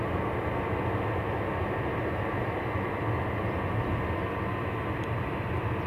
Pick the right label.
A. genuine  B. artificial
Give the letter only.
A